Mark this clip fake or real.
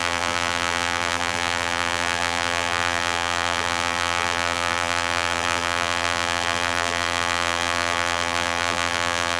fake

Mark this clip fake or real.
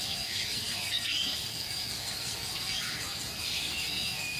fake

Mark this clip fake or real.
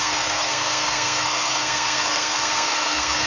fake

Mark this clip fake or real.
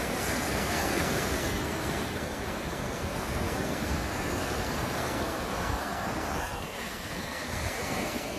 fake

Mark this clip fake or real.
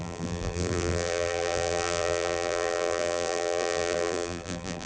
fake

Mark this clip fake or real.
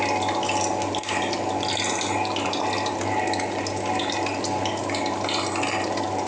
real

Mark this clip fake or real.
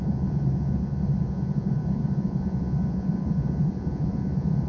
fake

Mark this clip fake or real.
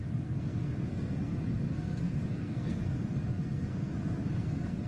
fake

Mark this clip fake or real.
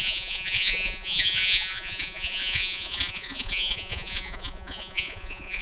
fake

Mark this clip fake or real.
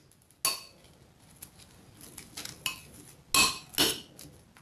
real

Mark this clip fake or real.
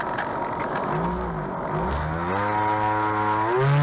real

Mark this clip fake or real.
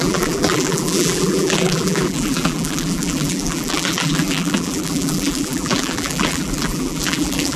fake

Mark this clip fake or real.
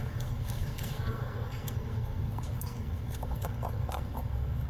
fake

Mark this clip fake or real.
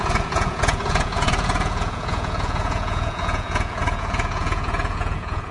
fake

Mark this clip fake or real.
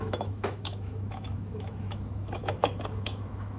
fake